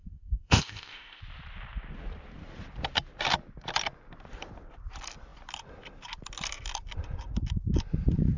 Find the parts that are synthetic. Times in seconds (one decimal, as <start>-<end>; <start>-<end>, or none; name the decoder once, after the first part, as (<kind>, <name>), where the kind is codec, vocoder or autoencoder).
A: 0.0-1.2 (codec, ZipCodec)